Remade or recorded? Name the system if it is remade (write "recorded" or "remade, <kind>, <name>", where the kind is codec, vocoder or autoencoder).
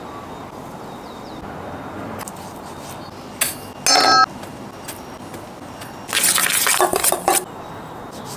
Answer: recorded